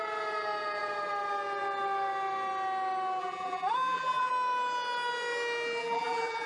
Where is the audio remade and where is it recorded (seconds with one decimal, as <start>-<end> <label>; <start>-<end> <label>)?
0.0-3.2 recorded; 3.2-4.3 remade; 4.3-5.8 recorded; 5.8-6.5 remade